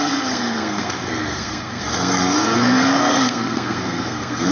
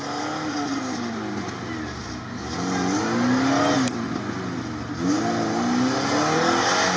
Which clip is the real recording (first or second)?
second